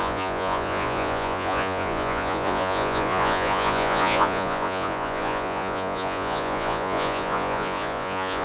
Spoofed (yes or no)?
yes